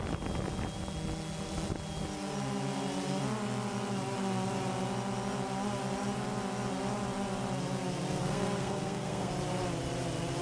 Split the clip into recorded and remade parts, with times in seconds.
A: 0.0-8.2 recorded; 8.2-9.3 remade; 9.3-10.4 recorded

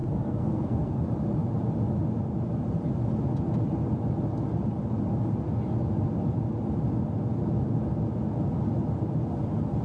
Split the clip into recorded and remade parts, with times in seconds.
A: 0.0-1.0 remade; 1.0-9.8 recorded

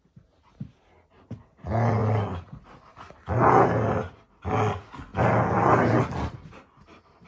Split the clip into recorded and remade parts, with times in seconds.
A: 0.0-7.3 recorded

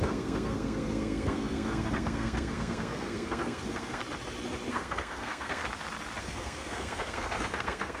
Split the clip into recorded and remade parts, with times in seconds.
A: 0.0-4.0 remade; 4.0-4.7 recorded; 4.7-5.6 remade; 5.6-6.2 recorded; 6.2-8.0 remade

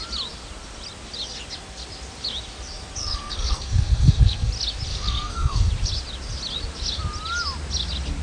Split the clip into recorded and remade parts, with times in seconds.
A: 0.0-3.0 recorded; 3.0-4.5 remade; 4.5-4.9 recorded; 4.9-5.7 remade; 5.7-8.2 recorded

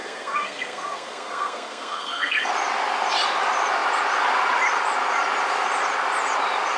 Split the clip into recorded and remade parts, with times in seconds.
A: 0.0-2.5 remade; 2.5-6.8 recorded

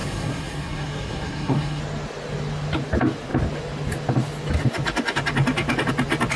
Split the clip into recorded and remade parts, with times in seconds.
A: 0.0-1.8 remade; 1.8-6.4 recorded

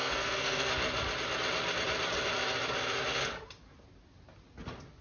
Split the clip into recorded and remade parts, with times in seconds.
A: 0.0-0.7 remade; 0.7-5.0 recorded